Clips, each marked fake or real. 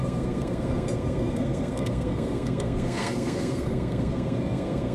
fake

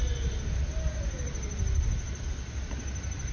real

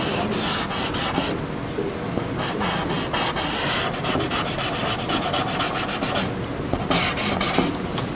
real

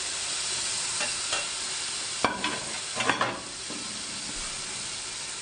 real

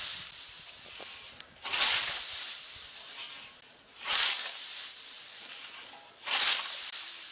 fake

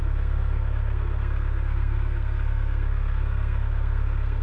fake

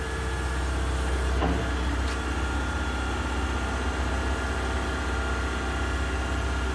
real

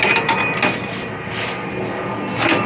real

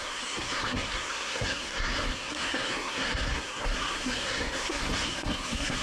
fake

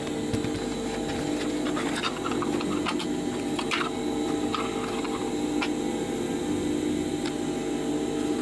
real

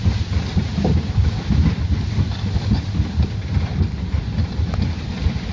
fake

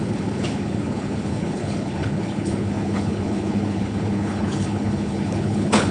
fake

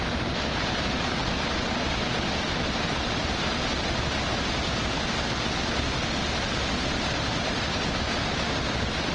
real